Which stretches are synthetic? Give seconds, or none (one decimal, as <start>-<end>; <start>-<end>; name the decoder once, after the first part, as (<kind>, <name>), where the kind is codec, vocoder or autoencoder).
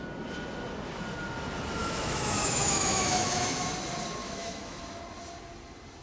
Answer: 1.8-3.7 (autoencoder, DAC-VAE); 4.2-4.8